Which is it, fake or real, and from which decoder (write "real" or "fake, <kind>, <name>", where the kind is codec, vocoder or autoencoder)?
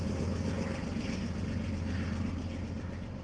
real